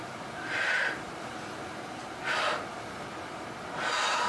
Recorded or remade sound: recorded